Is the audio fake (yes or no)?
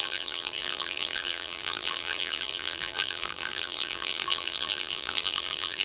yes